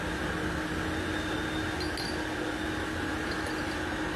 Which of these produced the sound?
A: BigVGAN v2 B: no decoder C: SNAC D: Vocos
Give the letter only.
B